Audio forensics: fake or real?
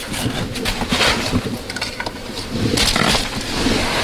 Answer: real